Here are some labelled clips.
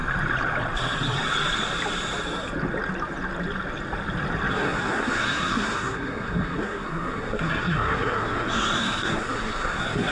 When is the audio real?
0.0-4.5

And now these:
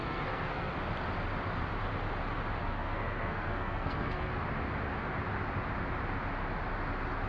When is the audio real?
0.7-2.6; 4.3-7.3

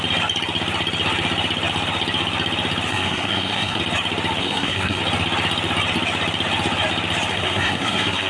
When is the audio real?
0.0-2.9; 3.8-4.4; 5.0-7.3